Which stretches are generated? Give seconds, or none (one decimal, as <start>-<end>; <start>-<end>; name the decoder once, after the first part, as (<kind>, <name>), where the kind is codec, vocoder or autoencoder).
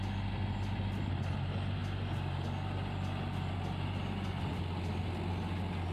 none